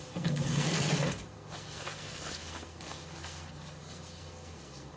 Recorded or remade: remade